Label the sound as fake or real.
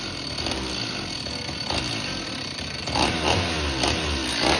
real